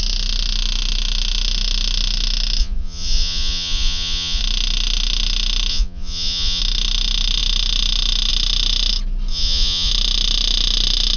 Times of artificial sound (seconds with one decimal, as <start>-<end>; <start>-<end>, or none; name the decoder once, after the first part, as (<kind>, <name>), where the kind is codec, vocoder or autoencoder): 2.6-4.4 (vocoder, Vocos); 5.7-6.6; 9.3-9.9